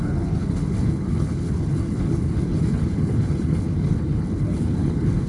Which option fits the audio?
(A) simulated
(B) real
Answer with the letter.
A